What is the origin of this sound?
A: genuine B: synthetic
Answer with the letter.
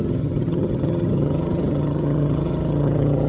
B